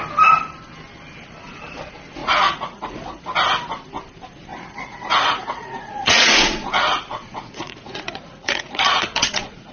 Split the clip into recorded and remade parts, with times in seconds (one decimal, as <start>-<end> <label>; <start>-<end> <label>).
0.0-2.2 recorded; 2.2-3.2 remade; 3.2-4.5 recorded; 4.5-9.7 remade